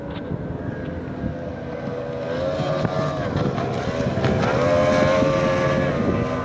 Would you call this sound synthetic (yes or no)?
no